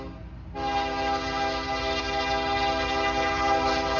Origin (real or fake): real